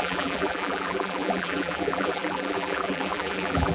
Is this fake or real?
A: fake